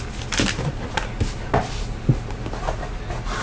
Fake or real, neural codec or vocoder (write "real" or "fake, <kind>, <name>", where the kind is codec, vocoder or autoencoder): real